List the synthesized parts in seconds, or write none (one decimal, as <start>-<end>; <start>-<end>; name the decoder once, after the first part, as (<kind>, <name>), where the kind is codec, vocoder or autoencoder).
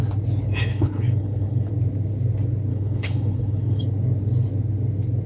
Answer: 0.7-1.7 (codec, HILCodec); 2.7-3.8